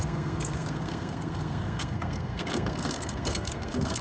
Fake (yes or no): yes